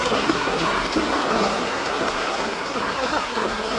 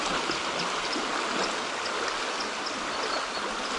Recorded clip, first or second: second